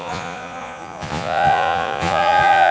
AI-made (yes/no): yes